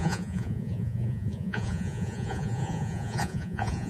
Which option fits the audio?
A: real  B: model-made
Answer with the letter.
B